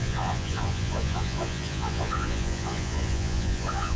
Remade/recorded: remade